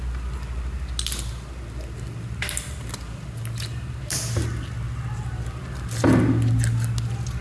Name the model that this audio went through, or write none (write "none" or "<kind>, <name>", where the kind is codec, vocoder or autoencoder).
none